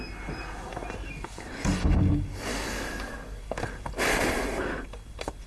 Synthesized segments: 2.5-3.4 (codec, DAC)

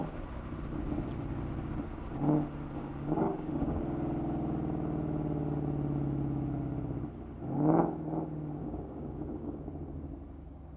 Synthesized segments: 2.8-3.8 (codec, DAC); 8.6-9.6

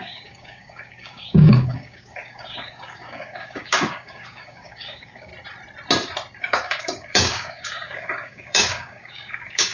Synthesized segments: 0.0-5.3 (codec, DAC); 6.4-9.7

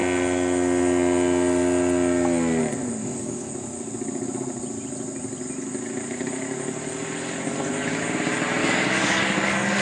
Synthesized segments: 3.0-3.5 (codec, DAC); 8.6-9.8

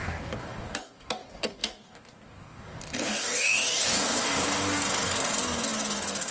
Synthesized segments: 0.0-6.3 (codec, DAC)

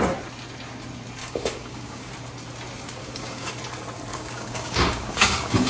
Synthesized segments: 1.2-2.1 (codec, DAC); 3.0-3.5; 4.1-5.7

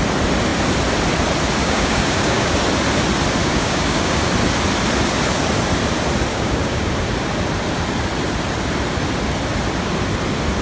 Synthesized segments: 1.6-2.5 (codec, DAC); 3.4-4.2; 6.3-6.9

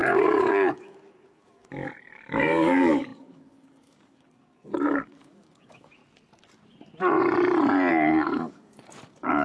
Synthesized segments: 0.0-6.0 (codec, DAC); 7.9-9.4